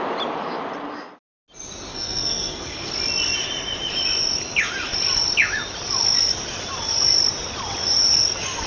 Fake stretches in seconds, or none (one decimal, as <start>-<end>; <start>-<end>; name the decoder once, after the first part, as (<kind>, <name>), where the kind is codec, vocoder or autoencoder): 1.9-2.9 (codec, SNAC)